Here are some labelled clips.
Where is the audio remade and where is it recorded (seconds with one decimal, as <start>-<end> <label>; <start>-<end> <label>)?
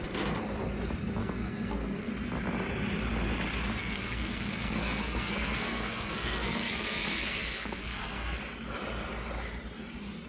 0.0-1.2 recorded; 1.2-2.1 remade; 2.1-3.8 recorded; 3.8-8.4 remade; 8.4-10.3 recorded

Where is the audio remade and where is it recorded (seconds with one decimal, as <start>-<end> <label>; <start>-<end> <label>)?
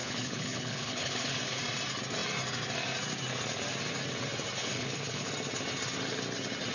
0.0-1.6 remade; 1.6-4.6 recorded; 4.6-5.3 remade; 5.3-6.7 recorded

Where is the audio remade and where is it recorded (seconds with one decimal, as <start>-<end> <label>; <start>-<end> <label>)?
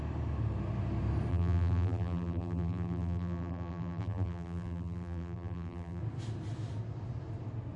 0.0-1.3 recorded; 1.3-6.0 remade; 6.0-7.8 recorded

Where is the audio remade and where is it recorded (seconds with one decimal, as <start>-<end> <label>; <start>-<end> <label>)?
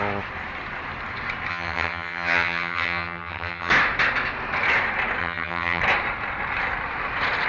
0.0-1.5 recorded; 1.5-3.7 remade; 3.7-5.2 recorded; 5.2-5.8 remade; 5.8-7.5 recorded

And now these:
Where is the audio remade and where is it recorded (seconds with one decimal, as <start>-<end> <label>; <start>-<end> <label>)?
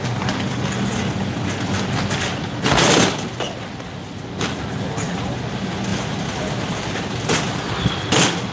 0.0-8.5 recorded